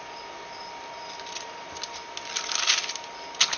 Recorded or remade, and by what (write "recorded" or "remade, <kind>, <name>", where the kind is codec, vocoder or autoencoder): recorded